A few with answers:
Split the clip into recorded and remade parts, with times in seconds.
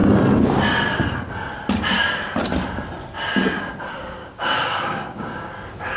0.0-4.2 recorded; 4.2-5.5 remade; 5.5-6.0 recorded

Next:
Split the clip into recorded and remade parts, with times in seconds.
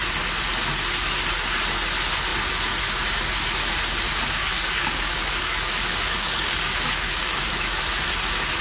0.0-4.4 recorded; 4.4-7.8 remade; 7.8-8.6 recorded